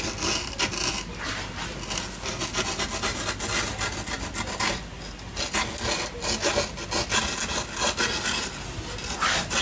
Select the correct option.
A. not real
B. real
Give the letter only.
B